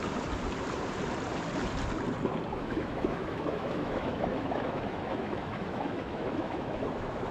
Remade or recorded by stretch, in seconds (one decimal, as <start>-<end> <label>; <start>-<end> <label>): 0.0-2.5 recorded; 2.5-7.3 remade